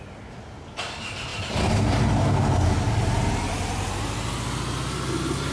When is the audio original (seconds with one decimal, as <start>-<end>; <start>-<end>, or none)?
0.0-5.5